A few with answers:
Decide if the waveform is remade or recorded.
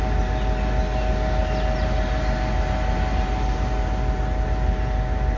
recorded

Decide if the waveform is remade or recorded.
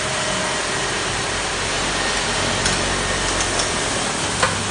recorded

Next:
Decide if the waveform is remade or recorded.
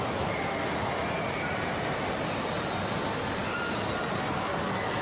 recorded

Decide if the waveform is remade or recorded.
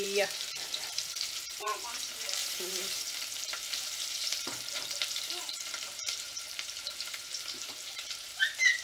remade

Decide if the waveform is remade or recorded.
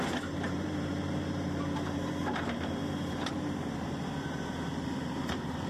remade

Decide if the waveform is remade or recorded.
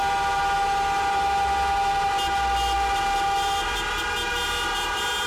recorded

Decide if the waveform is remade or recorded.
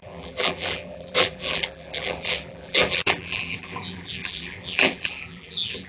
remade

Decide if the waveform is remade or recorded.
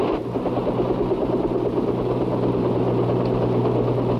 recorded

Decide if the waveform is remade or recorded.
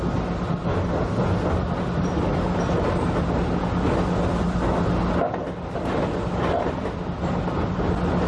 recorded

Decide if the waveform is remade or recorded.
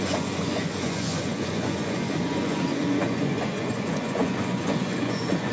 remade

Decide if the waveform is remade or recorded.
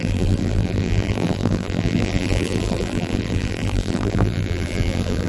remade